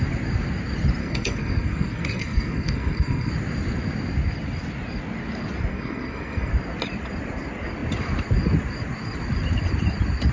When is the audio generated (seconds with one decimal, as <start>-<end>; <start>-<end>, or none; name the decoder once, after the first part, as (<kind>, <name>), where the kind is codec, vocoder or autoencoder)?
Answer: 1.0-3.3 (codec, SNAC); 5.7-6.5